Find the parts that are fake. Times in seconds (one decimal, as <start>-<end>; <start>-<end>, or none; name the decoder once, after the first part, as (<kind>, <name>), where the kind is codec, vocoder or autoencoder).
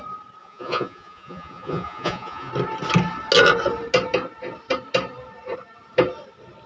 0.4-2.5 (vocoder, Vocos)